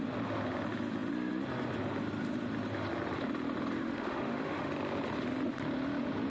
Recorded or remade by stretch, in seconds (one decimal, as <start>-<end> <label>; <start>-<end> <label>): 0.0-3.8 recorded; 3.8-4.7 remade; 4.7-6.3 recorded